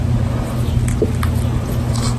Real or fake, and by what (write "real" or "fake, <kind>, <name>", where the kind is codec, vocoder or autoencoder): real